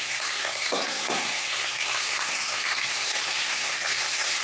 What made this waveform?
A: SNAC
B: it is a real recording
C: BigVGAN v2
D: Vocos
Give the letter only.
A